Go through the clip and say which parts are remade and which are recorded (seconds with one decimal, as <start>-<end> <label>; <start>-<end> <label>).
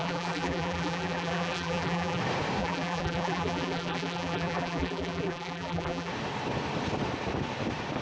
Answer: 0.0-2.2 remade; 2.2-2.6 recorded; 2.6-6.1 remade; 6.1-8.0 recorded